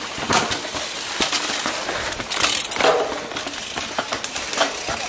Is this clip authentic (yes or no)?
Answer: yes